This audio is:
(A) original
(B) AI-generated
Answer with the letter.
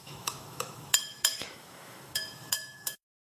B